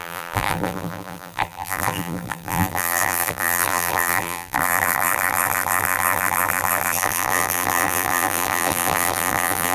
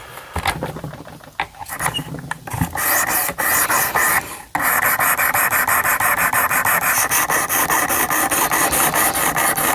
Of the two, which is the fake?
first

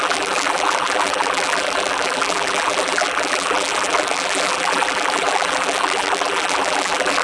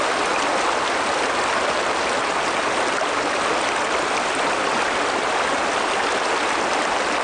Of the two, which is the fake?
first